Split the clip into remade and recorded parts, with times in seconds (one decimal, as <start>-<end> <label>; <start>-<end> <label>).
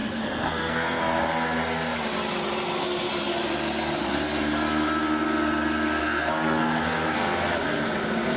0.0-1.2 remade; 1.2-6.0 recorded; 6.0-6.8 remade; 6.8-8.4 recorded